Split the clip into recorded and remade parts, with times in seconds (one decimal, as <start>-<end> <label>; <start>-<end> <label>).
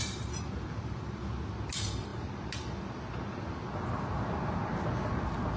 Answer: 0.0-1.2 remade; 1.2-5.6 recorded